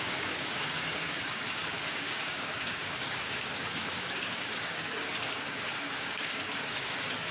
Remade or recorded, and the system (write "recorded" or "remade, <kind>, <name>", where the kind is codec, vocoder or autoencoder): remade, codec, DAC